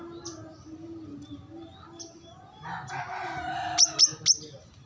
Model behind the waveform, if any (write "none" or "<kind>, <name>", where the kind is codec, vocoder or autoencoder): none